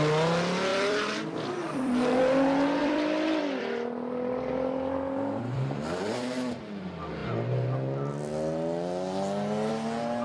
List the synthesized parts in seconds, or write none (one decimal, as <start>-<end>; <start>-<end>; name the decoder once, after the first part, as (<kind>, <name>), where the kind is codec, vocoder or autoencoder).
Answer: 0.7-2.2 (vocoder, BigVGAN v2); 2.8-6.6

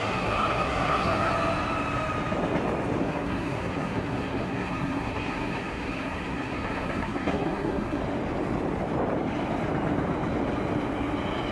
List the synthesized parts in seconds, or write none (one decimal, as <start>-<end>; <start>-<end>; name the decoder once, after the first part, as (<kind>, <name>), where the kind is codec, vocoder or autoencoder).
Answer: 0.0-1.3 (codec, SNAC); 3.0-8.0